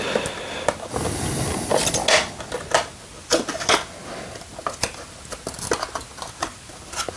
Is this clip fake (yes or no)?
no